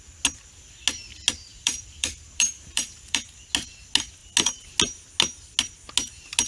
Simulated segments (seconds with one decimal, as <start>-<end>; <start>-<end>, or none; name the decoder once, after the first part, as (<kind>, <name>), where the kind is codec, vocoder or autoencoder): 1.5-3.2 (vocoder, BigVGAN v2)